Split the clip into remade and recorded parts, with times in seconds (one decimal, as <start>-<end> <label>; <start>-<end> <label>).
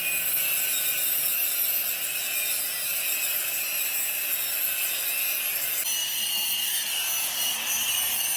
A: 0.0-8.4 recorded